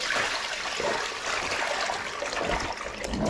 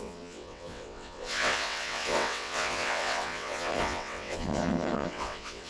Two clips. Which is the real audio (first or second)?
first